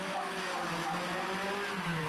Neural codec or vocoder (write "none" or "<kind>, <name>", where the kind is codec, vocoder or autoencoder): none